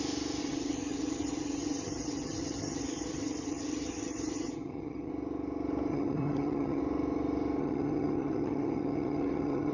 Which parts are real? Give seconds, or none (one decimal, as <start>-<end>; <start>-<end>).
0.0-0.4; 5.1-5.9; 6.8-7.6